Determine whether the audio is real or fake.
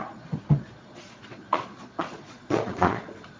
fake